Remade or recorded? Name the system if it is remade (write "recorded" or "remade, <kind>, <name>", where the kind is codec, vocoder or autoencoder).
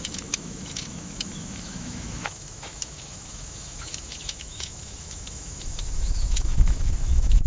remade, autoencoder, DAC-VAE